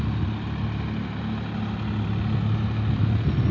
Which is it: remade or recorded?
recorded